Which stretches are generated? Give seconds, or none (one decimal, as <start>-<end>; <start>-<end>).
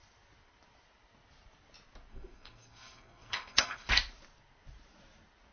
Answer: 2.1-3.9